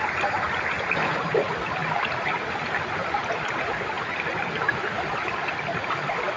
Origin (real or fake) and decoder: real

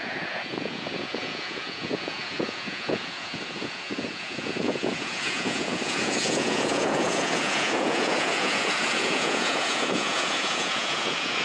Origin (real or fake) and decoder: fake, vocoder, Vocos